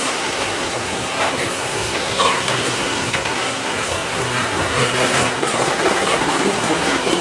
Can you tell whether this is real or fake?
fake